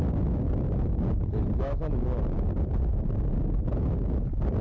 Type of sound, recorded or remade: recorded